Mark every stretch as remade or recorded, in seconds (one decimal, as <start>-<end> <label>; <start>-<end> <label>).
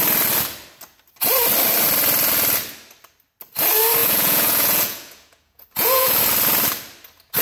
0.0-4.0 recorded; 4.0-6.2 remade; 6.2-7.4 recorded